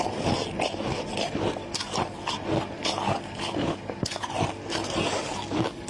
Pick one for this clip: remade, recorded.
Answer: recorded